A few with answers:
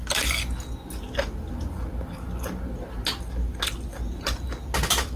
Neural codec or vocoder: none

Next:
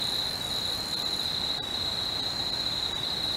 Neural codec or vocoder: none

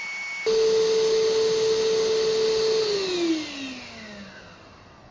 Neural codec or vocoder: none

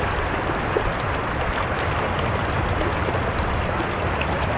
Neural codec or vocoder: none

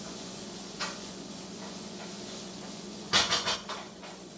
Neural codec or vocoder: vocoder, Vocos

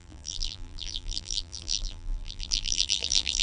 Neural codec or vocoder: vocoder, BigVGAN v2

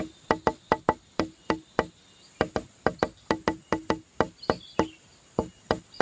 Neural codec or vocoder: none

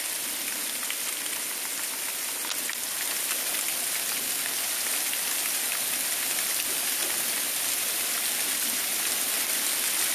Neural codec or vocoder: none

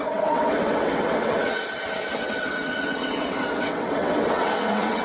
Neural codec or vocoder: vocoder, WaveNeXt